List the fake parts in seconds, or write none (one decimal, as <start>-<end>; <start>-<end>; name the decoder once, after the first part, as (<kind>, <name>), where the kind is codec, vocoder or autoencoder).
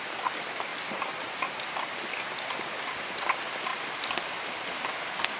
none